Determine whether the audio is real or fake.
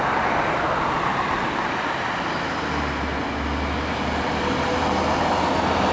real